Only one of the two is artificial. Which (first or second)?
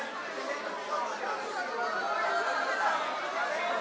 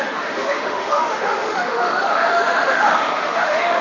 second